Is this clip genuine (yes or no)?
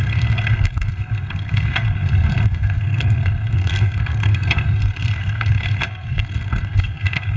no